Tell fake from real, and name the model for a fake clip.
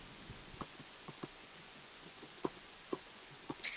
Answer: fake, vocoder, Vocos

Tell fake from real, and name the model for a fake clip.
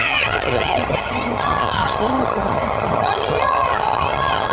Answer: fake, vocoder, HiFi-GAN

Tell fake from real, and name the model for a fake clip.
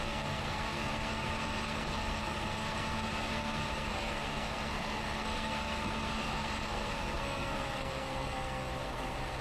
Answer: fake, codec, SNAC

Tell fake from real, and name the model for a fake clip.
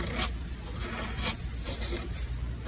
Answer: real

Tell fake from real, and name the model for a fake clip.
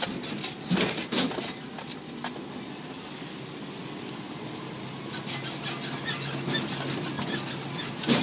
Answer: real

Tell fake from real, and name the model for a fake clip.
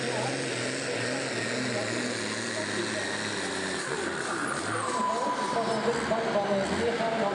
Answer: real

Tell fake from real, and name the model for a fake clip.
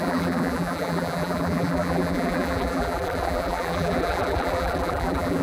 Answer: fake, vocoder, BigVGAN v2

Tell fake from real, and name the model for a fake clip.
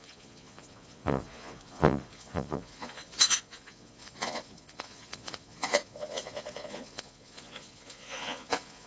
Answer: fake, vocoder, Vocos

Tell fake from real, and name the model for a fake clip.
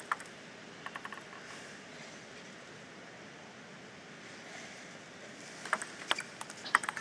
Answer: real